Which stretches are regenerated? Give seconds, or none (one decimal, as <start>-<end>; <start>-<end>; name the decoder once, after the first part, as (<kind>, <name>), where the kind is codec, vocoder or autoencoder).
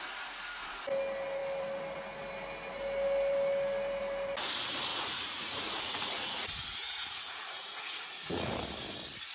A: 4.9-8.5 (vocoder, Vocos)